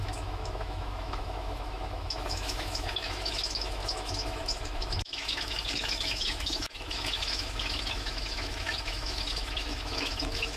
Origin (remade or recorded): remade